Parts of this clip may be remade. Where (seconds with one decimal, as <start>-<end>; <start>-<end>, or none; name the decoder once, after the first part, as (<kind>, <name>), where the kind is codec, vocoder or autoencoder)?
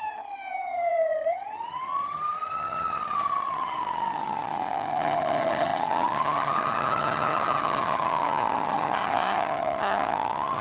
0.0-10.6 (vocoder, HiFi-GAN)